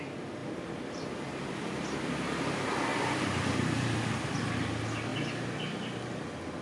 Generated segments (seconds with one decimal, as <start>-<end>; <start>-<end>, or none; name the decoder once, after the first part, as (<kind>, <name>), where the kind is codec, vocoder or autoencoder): 0.4-1.4 (vocoder, BigVGAN v2); 2.9-4.4